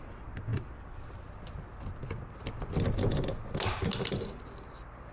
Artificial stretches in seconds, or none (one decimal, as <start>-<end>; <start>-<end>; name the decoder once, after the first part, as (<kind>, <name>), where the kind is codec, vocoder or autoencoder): none

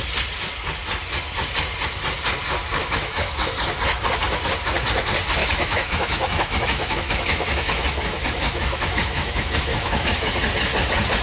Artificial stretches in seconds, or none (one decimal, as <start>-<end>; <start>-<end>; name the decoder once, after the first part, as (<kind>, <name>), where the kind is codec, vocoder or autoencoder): 2.8-3.5 (autoencoder, DAC-VAE); 5.4-10.3

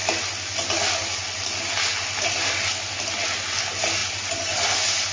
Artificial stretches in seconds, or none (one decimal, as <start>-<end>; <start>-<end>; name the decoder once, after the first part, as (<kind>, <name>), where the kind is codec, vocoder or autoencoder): none

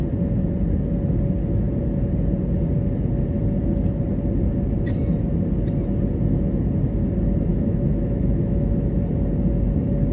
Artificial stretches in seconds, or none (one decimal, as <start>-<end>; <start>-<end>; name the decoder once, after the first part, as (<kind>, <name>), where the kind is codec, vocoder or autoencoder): 7.5-9.0 (autoencoder, DAC-VAE)

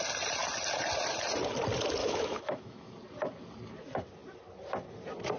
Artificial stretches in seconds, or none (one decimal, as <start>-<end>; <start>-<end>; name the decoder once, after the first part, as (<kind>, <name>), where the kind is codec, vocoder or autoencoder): 2.0-2.9 (autoencoder, DAC-VAE)